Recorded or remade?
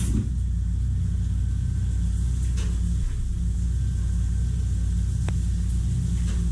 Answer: recorded